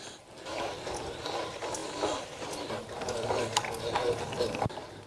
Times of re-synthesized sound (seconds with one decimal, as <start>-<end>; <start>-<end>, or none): none